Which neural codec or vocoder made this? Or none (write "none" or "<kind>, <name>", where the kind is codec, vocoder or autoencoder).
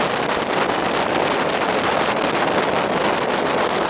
none